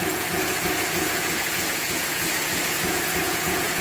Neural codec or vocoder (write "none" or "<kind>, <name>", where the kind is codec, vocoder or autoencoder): vocoder, Vocos